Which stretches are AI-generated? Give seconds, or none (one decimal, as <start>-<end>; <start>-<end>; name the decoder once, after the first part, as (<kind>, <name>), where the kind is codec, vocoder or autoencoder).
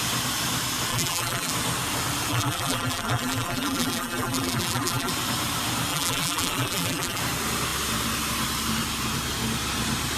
0.9-1.5 (vocoder, BigVGAN v2); 2.3-5.1; 5.9-7.2